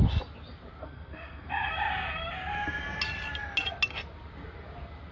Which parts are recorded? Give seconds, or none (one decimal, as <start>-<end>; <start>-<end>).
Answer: 0.0-0.8; 1.7-5.1